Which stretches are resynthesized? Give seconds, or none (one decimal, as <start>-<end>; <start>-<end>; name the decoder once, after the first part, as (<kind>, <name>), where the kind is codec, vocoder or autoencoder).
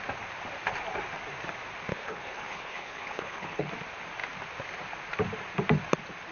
1.9-3.7 (codec, HILCodec)